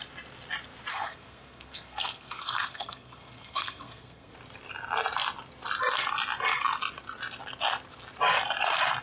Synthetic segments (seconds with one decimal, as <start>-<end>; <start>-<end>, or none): 0.9-4.3